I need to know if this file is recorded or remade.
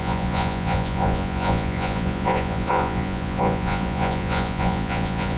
remade